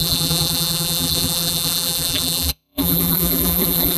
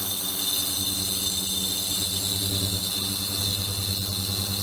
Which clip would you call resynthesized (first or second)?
first